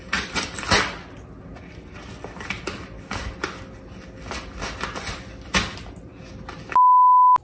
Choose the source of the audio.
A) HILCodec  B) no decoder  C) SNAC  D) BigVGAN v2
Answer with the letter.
B